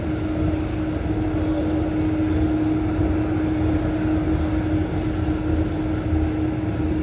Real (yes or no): yes